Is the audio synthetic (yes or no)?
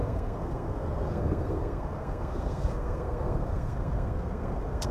yes